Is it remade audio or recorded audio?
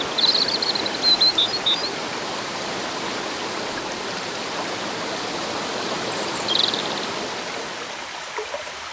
recorded